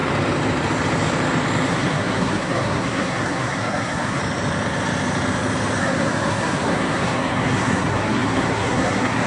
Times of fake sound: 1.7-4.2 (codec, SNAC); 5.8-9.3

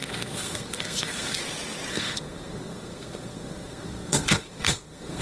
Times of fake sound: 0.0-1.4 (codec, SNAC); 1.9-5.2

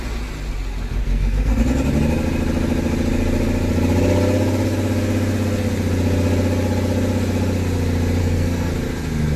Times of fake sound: 1.0-1.6 (codec, SNAC); 8.2-8.7

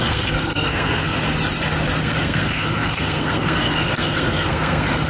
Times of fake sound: 0.0-1.2 (codec, SNAC); 2.0-5.1